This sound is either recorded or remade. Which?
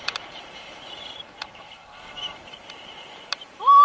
remade